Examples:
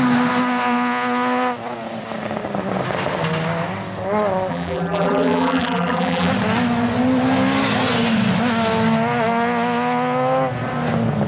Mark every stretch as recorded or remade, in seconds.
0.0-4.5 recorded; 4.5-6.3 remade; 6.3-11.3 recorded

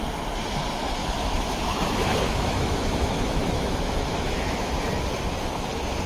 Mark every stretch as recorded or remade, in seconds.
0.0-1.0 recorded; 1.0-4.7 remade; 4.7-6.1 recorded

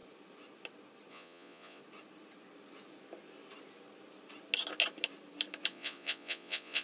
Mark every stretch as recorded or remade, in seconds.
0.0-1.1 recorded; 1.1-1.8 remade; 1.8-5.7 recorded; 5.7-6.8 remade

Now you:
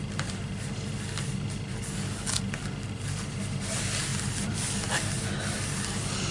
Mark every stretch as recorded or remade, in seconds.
0.0-1.7 recorded; 1.7-2.4 remade; 2.4-6.3 recorded

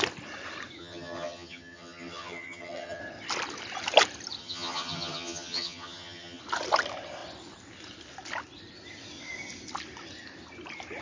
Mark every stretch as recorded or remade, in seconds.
0.0-0.8 recorded; 0.8-3.0 remade; 3.0-4.4 recorded; 4.4-6.4 remade; 6.4-11.0 recorded